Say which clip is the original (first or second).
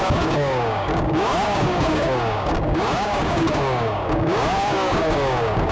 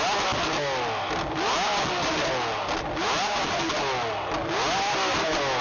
second